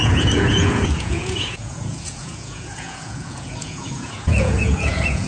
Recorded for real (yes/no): no